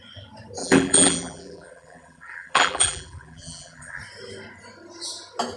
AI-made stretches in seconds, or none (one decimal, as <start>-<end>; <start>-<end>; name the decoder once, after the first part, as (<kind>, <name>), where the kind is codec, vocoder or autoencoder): 0.6-4.0 (vocoder, BigVGAN v2)